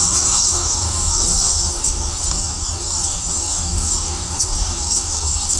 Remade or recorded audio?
remade